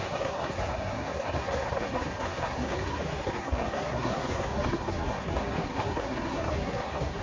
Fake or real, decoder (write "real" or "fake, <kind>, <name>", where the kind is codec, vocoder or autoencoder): fake, codec, SNAC